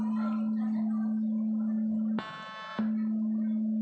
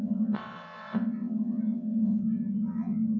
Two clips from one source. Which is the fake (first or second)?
second